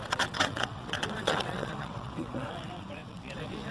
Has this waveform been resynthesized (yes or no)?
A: yes